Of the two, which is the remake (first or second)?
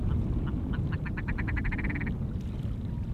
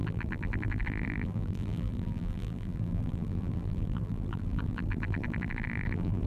second